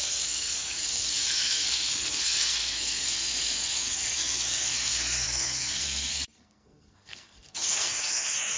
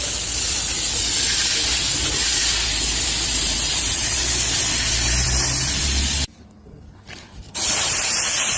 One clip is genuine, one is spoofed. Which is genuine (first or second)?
second